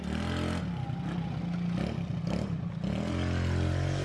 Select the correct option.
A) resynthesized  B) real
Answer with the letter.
B